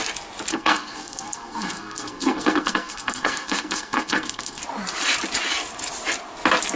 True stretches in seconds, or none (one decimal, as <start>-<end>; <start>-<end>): 0.0-0.5; 4.6-6.8